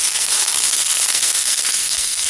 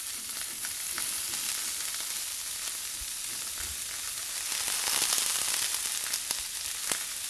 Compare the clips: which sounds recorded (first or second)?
second